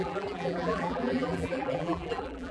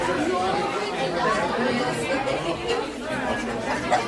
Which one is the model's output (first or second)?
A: first